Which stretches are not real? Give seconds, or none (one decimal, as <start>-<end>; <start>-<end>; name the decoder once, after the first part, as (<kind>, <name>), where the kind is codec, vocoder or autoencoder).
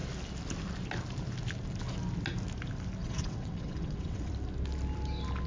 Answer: 3.0-4.3 (vocoder, WaveNeXt)